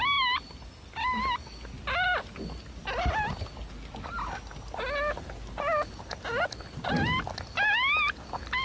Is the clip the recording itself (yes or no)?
yes